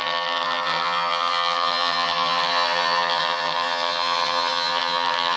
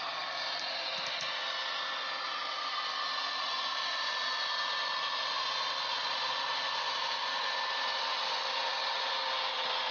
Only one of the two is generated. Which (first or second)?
first